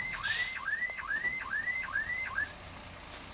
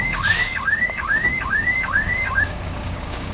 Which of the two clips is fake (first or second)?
second